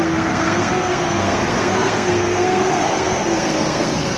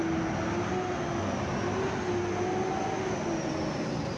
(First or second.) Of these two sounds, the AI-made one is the first